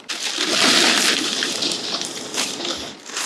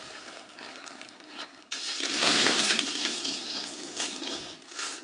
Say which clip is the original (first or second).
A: first